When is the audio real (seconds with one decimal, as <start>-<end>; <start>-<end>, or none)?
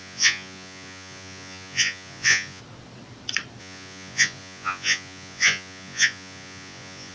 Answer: 2.6-3.6